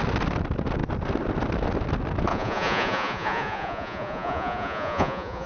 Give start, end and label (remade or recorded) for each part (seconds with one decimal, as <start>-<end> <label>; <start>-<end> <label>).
0.0-2.3 recorded; 2.3-5.5 remade